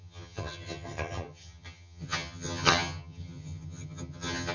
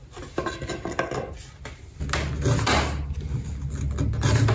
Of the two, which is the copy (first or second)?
first